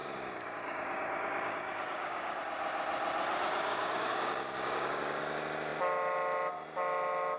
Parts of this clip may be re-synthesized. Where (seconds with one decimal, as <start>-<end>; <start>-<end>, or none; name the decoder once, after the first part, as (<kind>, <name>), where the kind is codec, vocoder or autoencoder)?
0.0-2.4 (codec, DAC); 3.7-5.2